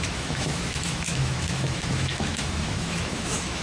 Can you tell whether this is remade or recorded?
remade